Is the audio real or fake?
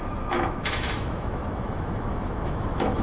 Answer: fake